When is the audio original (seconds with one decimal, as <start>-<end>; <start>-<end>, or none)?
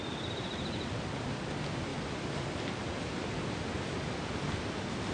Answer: 0.0-5.1